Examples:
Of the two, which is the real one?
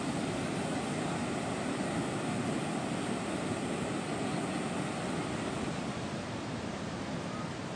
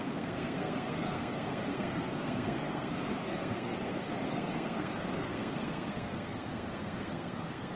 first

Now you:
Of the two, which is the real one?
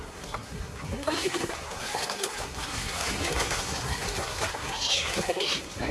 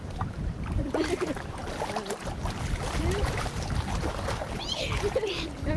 second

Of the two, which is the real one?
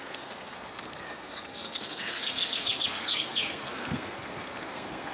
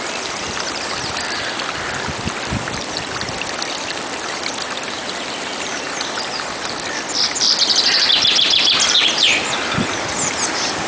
second